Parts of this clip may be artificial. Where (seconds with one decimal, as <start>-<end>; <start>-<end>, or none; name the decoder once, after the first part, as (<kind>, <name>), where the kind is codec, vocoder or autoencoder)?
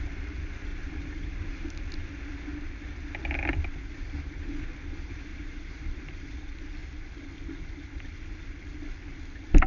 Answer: 0.7-1.9 (vocoder, BigVGAN v2); 5.3-6.3